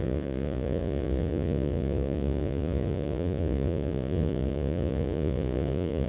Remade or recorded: remade